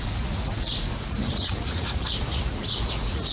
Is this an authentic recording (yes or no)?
no